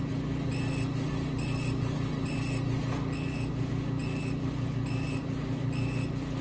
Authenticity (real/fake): real